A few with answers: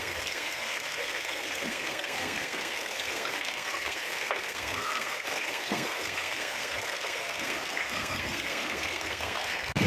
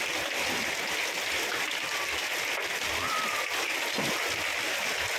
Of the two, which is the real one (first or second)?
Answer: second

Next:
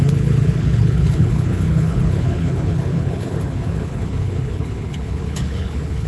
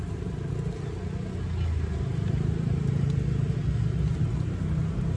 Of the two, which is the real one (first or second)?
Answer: second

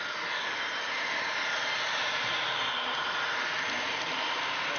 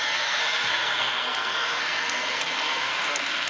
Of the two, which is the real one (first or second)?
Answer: first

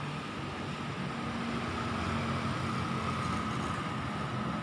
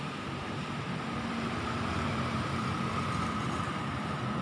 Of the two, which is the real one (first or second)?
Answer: first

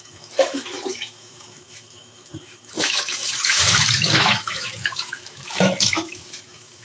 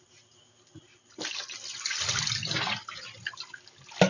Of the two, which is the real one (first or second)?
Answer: second